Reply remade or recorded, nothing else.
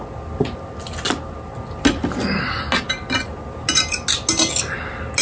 recorded